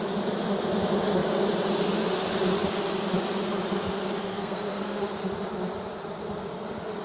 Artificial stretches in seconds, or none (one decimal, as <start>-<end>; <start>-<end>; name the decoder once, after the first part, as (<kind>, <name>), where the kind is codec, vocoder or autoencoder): 4.2-5.0 (codec, SNAC)